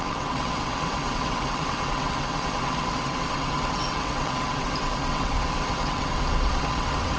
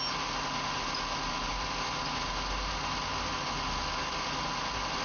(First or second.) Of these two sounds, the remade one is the first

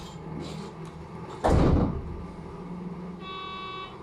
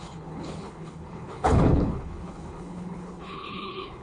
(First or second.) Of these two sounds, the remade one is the second